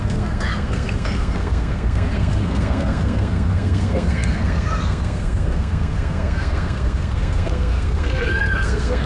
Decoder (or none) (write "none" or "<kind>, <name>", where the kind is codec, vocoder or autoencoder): codec, SNAC